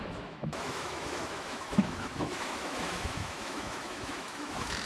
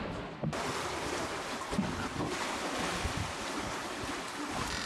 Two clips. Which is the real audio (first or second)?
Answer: second